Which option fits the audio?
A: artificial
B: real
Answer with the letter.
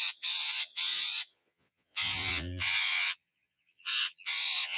A